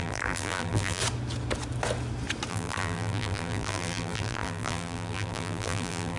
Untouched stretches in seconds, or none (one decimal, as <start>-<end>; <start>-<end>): 1.0-2.5